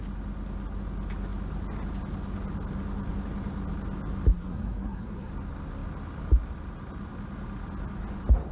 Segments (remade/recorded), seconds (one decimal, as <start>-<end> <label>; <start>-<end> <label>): 0.0-4.3 recorded; 4.3-5.3 remade; 5.3-8.5 recorded